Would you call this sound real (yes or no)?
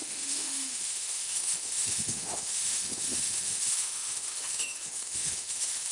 no